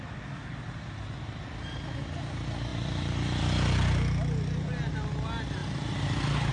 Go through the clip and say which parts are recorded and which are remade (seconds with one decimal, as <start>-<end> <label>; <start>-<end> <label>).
0.0-6.5 recorded